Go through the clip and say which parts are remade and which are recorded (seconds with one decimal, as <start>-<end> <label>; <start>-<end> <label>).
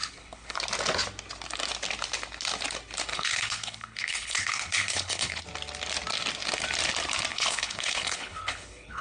0.0-0.6 remade; 0.6-3.1 recorded; 3.1-5.4 remade; 5.4-7.3 recorded; 7.3-9.0 remade